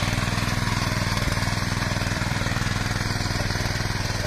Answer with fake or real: fake